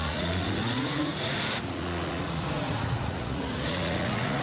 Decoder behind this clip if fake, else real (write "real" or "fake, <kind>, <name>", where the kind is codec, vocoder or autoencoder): fake, vocoder, Vocos